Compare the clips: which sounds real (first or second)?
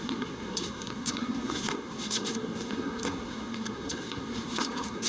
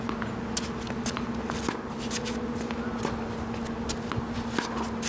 second